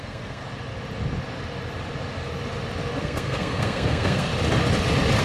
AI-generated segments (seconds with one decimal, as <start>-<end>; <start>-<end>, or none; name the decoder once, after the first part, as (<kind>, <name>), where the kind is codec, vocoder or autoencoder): 0.0-0.4 (codec, SNAC); 3.0-4.3